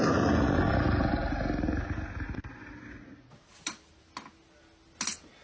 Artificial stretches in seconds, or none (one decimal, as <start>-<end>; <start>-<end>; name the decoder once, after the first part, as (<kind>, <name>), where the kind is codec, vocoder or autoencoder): none